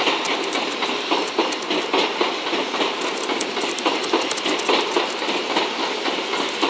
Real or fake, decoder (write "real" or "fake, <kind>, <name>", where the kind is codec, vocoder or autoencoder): real